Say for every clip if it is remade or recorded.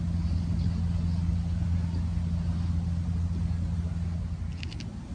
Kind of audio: recorded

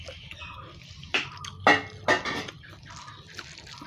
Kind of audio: recorded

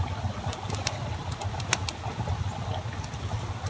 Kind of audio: recorded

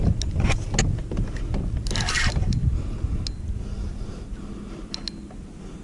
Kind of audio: recorded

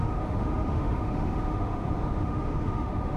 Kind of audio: remade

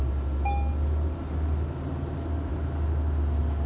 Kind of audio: recorded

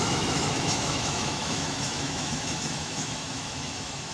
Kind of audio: remade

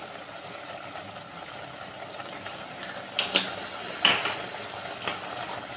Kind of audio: recorded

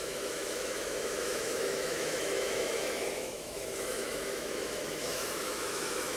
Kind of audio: remade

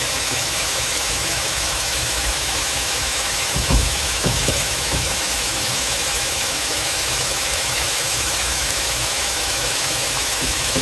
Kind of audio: remade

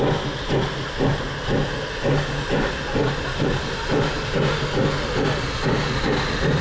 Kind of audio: recorded